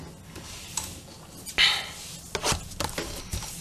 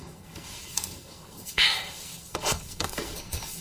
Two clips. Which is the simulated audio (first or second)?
second